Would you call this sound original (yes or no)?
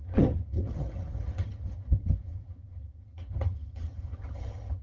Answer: no